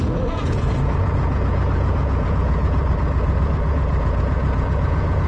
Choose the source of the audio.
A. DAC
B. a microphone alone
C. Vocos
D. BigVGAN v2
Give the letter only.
C